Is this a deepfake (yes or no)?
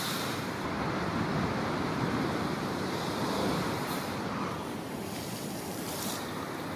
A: yes